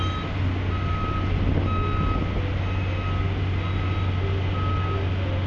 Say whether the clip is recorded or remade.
recorded